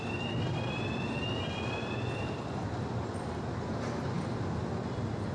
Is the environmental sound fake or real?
real